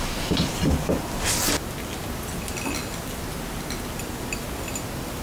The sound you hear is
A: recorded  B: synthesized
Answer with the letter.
A